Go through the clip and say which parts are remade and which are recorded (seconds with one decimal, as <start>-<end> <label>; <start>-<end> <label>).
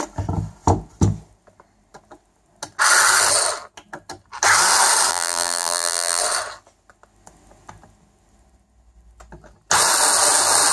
0.0-5.1 recorded; 5.1-6.2 remade; 6.2-10.7 recorded